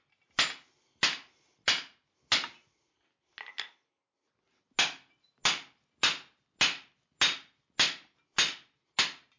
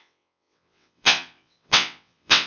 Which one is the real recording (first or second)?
first